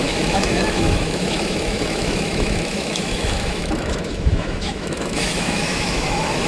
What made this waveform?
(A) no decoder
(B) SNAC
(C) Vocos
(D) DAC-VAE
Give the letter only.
D